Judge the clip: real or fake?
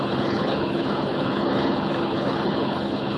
fake